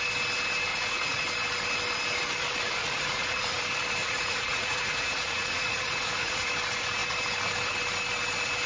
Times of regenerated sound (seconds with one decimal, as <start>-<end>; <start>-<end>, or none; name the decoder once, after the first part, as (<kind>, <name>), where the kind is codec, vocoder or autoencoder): 0.7-1.2 (vocoder, Vocos); 2.8-3.6; 4.0-6.5